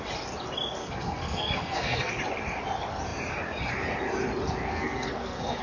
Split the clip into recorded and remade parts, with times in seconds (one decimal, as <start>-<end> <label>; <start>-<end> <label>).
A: 0.0-0.8 recorded; 0.8-2.1 remade; 2.1-4.7 recorded; 4.7-5.6 remade